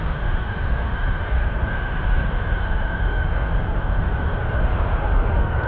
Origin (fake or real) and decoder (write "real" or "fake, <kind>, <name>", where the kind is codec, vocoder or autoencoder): fake, autoencoder, DAC-VAE